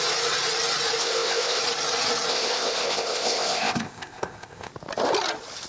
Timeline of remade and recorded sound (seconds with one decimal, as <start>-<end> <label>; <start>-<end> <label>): 0.0-1.0 recorded; 1.0-1.6 remade; 1.6-2.3 recorded; 2.3-4.7 remade; 4.7-5.7 recorded